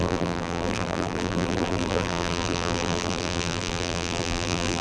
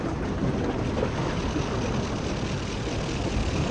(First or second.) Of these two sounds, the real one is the second